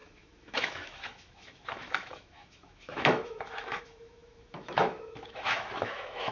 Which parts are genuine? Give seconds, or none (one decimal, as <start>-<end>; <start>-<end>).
none